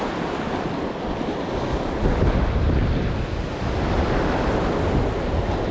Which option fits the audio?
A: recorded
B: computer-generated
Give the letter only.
A